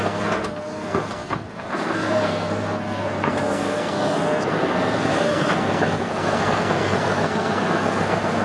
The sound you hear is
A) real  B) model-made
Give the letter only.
B